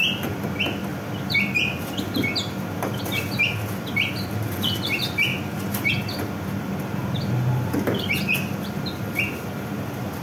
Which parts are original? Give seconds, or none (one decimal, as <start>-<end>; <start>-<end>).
0.0-10.2